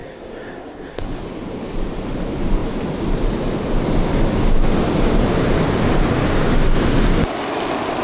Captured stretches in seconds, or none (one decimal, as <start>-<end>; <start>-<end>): 1.2-8.0